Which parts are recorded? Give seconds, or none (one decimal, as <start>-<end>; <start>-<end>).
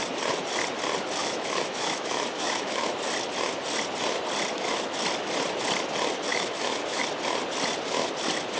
0.0-1.2; 2.9-6.3; 7.0-8.6